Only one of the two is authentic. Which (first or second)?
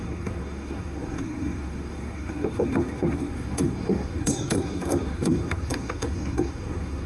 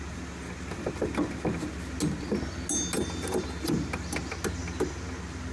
second